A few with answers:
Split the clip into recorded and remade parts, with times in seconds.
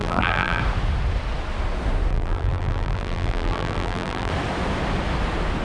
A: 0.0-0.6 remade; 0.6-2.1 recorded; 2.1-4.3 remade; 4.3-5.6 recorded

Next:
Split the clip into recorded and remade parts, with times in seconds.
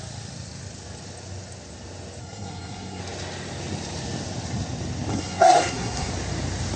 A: 0.0-2.2 recorded; 2.2-3.0 remade; 3.0-5.1 recorded; 5.1-6.1 remade; 6.1-6.8 recorded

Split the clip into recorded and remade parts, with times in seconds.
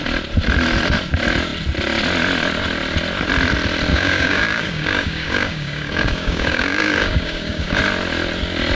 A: 0.0-3.9 recorded; 3.9-7.8 remade; 7.8-8.7 recorded